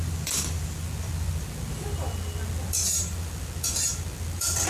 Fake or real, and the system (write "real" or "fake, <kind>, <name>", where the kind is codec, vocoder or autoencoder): fake, vocoder, BigVGAN v2